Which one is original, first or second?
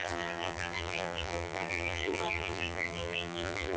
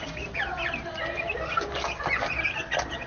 second